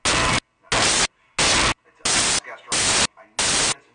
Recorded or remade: recorded